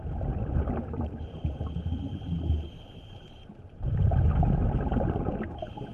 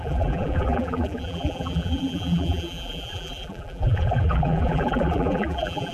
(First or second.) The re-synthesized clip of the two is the second